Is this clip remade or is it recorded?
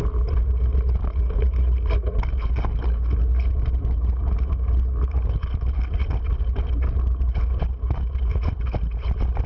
recorded